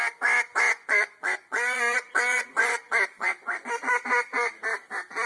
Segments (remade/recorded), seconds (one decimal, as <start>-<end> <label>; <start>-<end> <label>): 0.0-0.7 recorded; 0.7-3.9 remade; 3.9-5.3 recorded